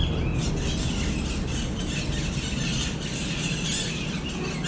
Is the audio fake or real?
real